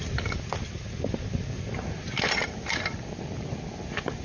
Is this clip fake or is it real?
real